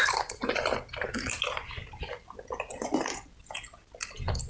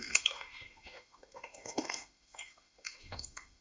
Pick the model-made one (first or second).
second